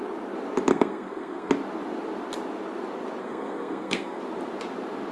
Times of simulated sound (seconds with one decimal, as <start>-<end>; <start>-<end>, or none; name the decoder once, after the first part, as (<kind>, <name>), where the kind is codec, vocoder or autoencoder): 0.7-1.5 (codec, SNAC); 3.2-4.2